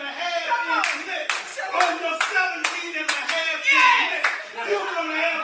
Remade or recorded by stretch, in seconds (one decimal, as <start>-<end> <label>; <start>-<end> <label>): 0.0-2.6 recorded; 2.6-4.4 remade; 4.4-5.4 recorded